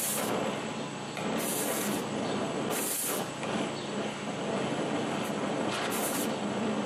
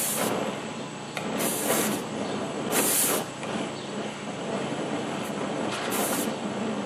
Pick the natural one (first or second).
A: first